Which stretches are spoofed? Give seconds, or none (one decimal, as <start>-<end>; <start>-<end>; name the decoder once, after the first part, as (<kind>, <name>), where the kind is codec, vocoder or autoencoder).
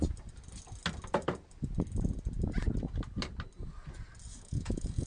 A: 4.3-5.1 (autoencoder, DAC-VAE)